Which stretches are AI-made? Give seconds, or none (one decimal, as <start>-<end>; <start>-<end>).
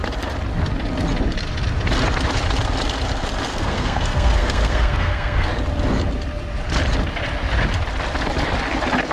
3.5-5.5